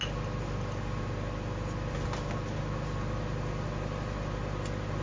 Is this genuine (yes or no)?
yes